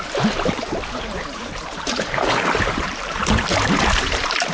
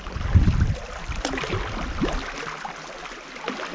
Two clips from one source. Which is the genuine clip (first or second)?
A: second